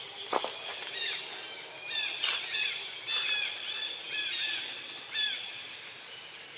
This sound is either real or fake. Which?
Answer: real